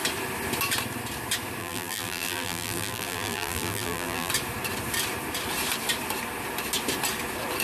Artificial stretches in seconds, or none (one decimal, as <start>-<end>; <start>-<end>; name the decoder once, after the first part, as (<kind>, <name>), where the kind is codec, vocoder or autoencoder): 1.6-4.3 (vocoder, BigVGAN v2)